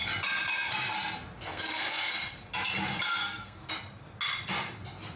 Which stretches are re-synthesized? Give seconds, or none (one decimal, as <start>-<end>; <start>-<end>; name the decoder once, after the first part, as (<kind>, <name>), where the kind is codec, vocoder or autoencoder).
1.5-2.1 (codec, SNAC); 3.2-3.7